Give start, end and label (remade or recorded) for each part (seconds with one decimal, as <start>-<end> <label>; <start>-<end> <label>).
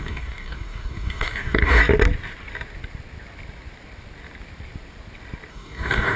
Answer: 0.0-1.8 remade; 1.8-5.5 recorded; 5.5-6.2 remade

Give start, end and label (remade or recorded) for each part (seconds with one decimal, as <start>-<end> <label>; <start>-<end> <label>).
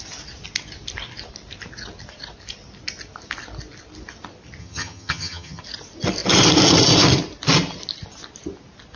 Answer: 0.0-4.6 recorded; 4.6-5.6 remade; 5.6-9.0 recorded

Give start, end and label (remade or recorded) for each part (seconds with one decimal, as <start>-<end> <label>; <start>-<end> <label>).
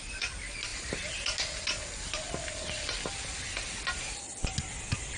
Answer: 0.0-5.2 recorded